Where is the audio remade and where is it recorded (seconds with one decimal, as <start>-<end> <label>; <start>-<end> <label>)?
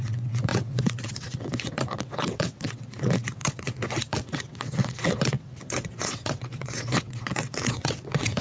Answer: 0.0-8.4 remade